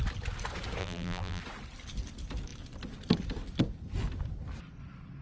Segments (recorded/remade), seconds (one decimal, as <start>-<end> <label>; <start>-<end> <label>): 0.0-0.8 recorded; 0.8-1.4 remade; 1.4-5.2 recorded